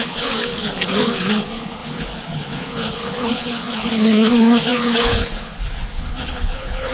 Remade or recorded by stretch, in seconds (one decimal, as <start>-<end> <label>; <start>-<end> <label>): 0.0-6.9 remade